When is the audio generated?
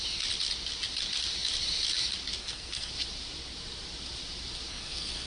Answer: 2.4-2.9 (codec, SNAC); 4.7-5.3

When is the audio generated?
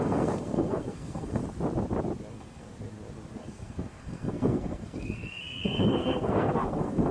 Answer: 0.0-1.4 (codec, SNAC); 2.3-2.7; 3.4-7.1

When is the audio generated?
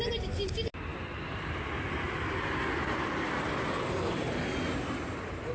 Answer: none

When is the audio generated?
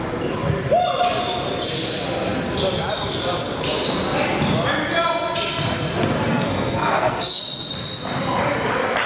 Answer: 6.3-7.4 (codec, SNAC)